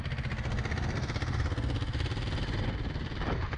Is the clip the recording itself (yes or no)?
yes